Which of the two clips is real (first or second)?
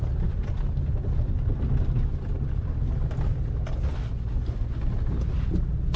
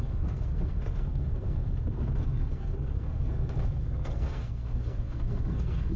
first